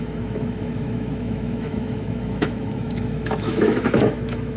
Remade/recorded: remade